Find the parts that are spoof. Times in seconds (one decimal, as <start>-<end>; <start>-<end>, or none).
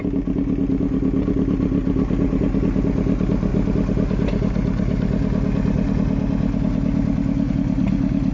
none